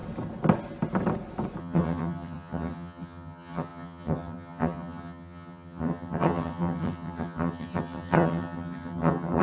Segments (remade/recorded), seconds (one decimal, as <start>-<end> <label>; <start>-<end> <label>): 0.0-1.6 recorded; 1.6-9.4 remade